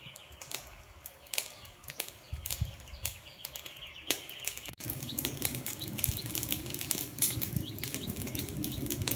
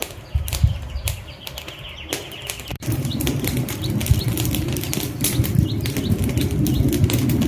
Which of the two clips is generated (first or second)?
first